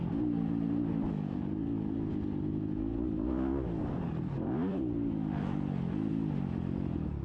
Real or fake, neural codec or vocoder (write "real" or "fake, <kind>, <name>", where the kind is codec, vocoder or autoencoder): real